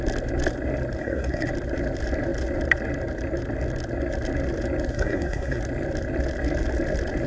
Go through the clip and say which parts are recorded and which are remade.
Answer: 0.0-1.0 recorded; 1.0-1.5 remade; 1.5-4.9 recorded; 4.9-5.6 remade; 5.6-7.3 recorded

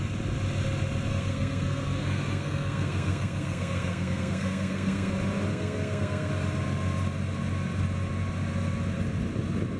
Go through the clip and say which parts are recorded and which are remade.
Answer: 0.0-1.1 recorded; 1.1-5.1 remade; 5.1-5.5 recorded; 5.5-6.3 remade; 6.3-9.8 recorded